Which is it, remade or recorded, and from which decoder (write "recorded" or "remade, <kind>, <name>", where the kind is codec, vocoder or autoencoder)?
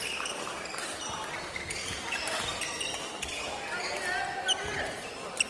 recorded